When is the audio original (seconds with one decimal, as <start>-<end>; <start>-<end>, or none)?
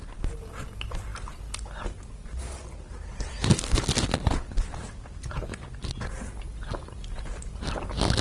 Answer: 0.0-8.2